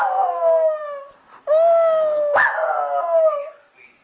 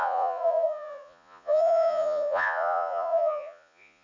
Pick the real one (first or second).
first